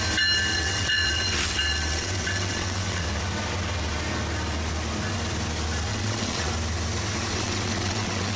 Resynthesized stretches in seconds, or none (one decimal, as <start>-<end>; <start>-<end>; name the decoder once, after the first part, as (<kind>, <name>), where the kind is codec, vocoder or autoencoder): 0.5-3.0 (vocoder, WaveNeXt); 5.9-6.5; 7.3-8.4